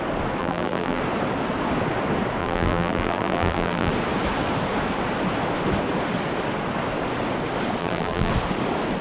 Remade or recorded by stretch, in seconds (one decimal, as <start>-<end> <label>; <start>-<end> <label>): 0.0-0.4 recorded; 0.4-1.0 remade; 1.0-2.4 recorded; 2.4-3.9 remade; 3.9-7.8 recorded; 7.8-8.3 remade; 8.3-9.0 recorded